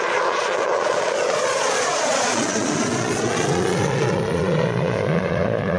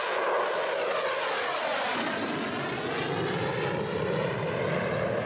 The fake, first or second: first